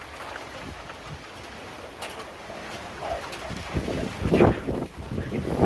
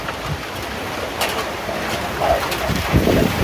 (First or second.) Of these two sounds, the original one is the first